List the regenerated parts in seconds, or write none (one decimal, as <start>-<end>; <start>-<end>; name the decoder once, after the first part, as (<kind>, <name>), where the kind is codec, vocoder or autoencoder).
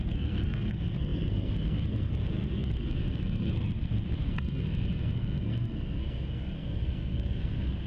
0.0-7.9 (codec, SNAC)